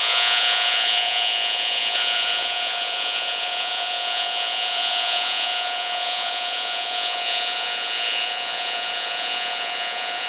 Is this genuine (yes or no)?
no